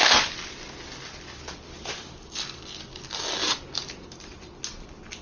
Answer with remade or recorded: recorded